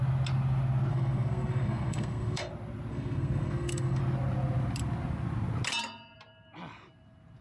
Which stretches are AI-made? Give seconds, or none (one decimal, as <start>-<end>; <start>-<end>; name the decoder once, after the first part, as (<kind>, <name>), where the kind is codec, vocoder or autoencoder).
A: 0.9-2.5 (codec, SNAC); 2.9-4.0